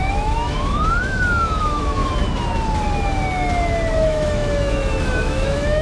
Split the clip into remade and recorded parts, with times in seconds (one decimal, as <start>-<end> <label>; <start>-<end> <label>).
0.0-2.0 remade; 2.0-3.9 recorded; 3.9-5.8 remade

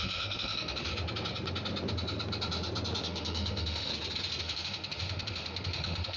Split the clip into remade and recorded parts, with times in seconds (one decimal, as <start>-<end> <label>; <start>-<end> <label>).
0.0-0.9 remade; 0.9-3.0 recorded; 3.0-3.9 remade; 3.9-4.4 recorded; 4.4-6.2 remade